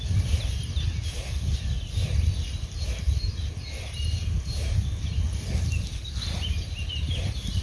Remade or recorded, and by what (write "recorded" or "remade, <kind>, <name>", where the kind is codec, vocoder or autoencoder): recorded